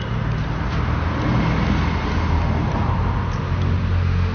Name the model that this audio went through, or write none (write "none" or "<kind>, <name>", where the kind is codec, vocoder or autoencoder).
none